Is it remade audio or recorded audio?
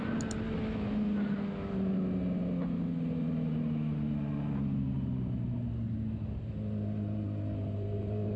recorded